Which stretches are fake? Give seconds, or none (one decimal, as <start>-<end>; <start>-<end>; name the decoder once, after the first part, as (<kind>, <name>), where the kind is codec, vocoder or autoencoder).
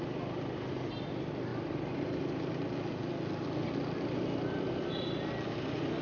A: 1.5-2.2 (vocoder, BigVGAN v2)